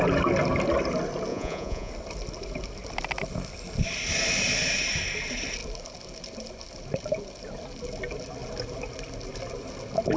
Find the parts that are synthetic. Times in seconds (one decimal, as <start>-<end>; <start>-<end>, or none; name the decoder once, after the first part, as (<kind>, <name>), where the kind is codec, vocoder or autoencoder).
1.3-1.9 (vocoder, Vocos)